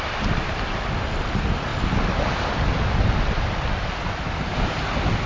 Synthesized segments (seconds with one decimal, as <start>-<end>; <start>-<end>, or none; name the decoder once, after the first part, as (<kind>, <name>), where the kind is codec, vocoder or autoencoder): none